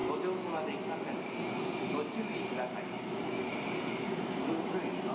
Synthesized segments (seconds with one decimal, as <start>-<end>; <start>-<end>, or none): none